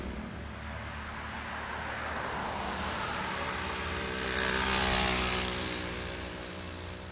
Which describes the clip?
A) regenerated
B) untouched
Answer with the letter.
B